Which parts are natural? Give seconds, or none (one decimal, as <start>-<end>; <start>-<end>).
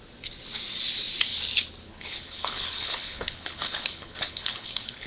0.0-1.9